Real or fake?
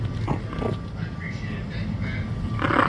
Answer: real